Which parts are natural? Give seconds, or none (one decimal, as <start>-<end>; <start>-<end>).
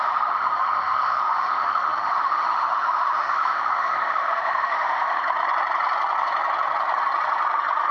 5.2-7.9